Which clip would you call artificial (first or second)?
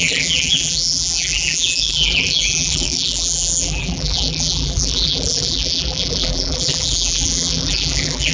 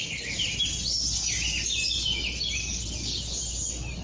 first